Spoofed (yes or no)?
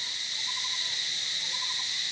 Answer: no